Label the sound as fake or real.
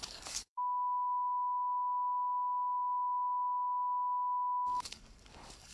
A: fake